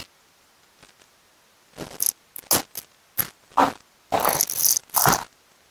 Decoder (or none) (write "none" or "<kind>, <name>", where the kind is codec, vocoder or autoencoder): none